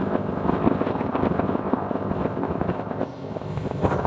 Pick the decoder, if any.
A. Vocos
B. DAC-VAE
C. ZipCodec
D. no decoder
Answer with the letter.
C